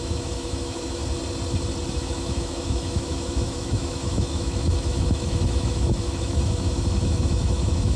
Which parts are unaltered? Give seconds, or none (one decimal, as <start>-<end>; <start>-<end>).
1.0-1.9